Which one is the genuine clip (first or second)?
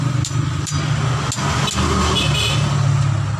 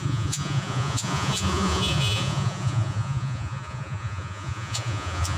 first